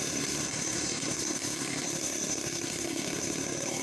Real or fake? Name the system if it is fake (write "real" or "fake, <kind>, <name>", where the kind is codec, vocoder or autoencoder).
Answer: fake, codec, SNAC